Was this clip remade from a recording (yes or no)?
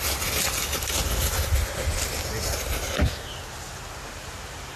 no